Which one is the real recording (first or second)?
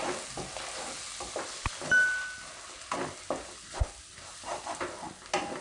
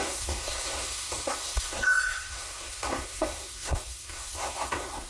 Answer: first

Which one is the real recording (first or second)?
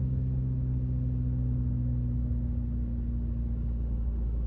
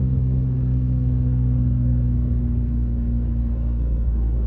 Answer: first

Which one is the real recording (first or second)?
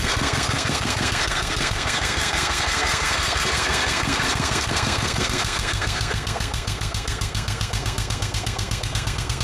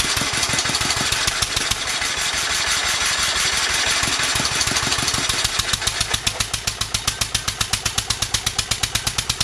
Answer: second